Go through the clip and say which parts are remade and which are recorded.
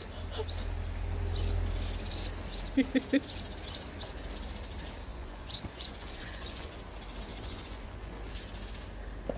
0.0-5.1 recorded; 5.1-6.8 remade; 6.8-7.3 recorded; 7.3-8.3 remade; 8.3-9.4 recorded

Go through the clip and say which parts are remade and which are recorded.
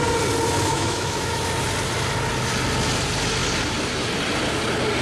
0.0-0.7 recorded; 0.7-1.4 remade; 1.4-5.0 recorded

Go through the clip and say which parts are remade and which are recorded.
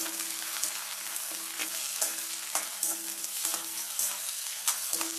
0.0-5.2 remade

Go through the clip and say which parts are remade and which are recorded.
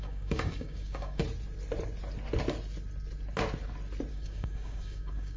0.0-1.2 remade; 1.2-4.1 recorded; 4.1-5.4 remade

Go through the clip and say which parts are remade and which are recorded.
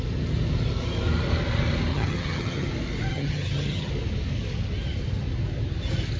0.0-1.9 recorded; 1.9-2.7 remade; 2.7-3.1 recorded; 3.1-3.9 remade; 3.9-6.2 recorded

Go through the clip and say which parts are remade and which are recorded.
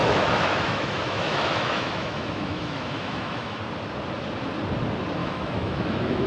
0.0-3.6 remade; 3.6-5.2 recorded; 5.2-6.3 remade